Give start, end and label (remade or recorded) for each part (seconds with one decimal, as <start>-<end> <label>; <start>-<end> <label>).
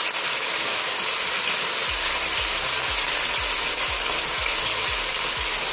0.0-5.7 recorded